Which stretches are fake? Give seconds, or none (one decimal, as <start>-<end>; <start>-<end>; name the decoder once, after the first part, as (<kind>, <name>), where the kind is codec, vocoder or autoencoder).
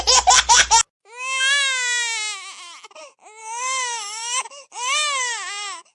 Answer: 3.4-5.9 (codec, DAC)